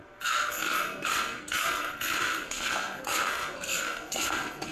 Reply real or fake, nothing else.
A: fake